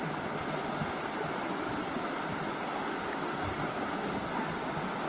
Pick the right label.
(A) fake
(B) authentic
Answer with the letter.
B